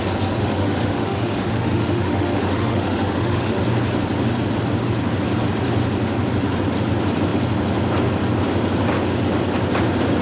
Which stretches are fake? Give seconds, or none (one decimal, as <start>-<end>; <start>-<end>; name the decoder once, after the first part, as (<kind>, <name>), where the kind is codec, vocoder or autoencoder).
0.4-3.6 (autoencoder, DAC-VAE)